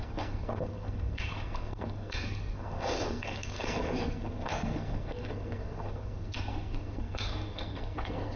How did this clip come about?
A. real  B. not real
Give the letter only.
B